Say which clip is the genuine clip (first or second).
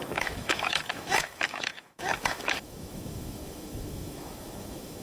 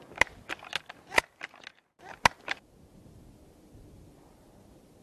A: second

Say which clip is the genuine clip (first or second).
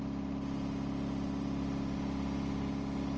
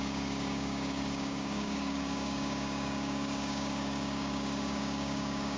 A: first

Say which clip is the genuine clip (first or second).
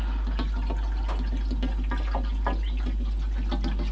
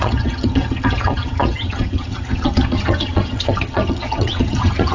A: first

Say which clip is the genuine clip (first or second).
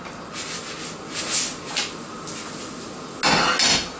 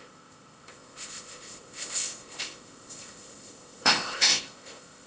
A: first